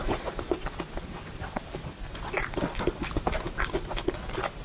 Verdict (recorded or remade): recorded